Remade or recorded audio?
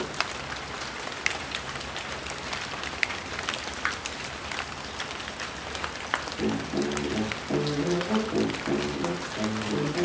recorded